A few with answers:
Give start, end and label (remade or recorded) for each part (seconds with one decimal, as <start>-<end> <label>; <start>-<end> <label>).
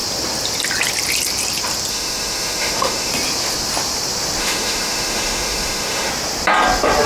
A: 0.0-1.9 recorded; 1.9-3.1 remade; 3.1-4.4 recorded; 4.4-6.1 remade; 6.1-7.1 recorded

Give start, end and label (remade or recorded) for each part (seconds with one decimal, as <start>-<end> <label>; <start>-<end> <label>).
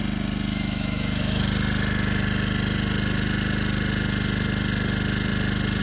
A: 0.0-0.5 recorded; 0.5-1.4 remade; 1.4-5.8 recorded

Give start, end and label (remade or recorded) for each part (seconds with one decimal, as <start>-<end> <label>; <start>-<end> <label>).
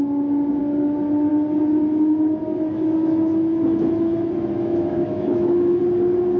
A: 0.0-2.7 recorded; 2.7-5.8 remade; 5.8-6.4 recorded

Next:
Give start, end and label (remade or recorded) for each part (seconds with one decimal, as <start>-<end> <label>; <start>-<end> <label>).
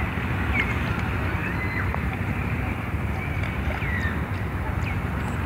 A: 0.0-5.5 recorded